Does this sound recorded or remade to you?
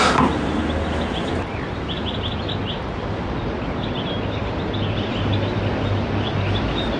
recorded